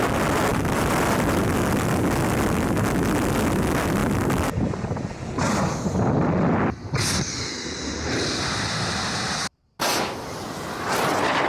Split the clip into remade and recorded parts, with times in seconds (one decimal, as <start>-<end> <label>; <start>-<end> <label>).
0.0-11.5 recorded